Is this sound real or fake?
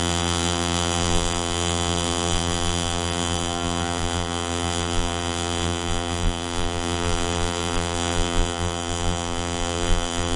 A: fake